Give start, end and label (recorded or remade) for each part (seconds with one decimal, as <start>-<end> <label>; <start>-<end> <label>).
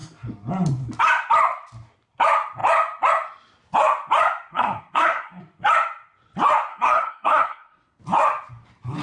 0.0-4.5 recorded; 4.5-5.4 remade; 5.4-6.7 recorded; 6.7-8.0 remade; 8.0-9.0 recorded